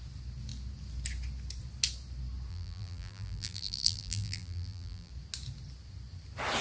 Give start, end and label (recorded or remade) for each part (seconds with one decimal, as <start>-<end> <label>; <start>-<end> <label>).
0.0-2.5 recorded; 2.5-5.1 remade; 5.1-6.6 recorded